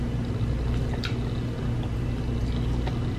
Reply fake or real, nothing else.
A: real